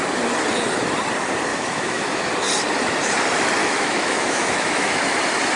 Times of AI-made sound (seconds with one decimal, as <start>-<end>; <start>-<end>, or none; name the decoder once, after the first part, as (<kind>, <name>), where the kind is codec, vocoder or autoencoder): 1.5-2.3 (autoencoder, DAC-VAE); 3.6-5.0